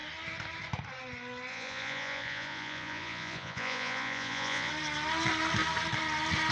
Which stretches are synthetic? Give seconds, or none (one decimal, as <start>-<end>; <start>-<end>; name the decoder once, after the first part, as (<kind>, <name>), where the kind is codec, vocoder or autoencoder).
1.5-4.7 (vocoder, Vocos)